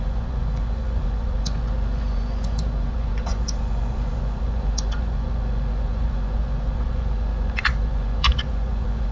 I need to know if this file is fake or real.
fake